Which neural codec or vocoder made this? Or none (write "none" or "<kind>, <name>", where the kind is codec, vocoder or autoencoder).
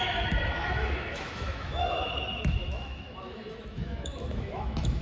autoencoder, DAC-VAE